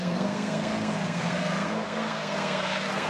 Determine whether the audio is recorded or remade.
remade